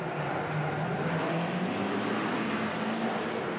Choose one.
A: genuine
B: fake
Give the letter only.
A